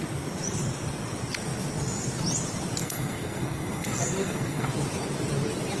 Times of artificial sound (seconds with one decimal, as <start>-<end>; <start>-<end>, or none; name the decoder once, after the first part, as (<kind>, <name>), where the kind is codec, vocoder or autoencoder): 2.8-4.7 (codec, SNAC)